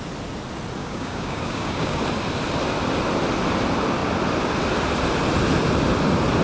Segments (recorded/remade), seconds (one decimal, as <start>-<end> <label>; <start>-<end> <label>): 0.0-0.8 recorded; 0.8-2.0 remade; 2.0-6.4 recorded

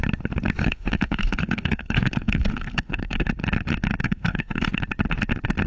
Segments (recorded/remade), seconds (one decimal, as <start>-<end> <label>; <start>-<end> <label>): 0.0-0.6 recorded; 0.6-3.3 remade; 3.3-4.0 recorded; 4.0-4.8 remade; 4.8-5.7 recorded

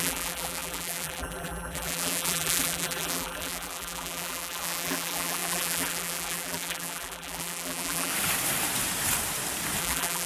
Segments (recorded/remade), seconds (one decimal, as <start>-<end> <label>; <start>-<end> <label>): 0.0-8.1 remade; 8.1-9.8 recorded; 9.8-10.3 remade

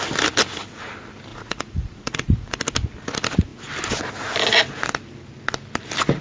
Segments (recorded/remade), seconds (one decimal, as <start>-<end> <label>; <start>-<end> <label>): 0.0-1.3 recorded; 1.3-2.6 remade; 2.6-6.2 recorded